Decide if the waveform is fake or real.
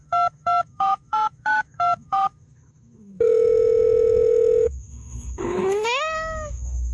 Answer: fake